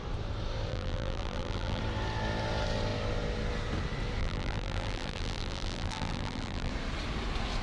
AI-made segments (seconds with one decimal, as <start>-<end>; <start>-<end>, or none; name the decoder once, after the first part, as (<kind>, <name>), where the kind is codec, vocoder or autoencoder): 0.7-1.8 (vocoder, BigVGAN v2); 4.2-6.7